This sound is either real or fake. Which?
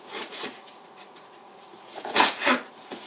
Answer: fake